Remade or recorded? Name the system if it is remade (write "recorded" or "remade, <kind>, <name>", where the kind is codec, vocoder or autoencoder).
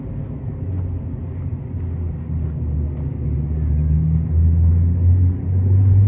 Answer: recorded